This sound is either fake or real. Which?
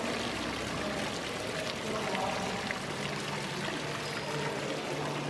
real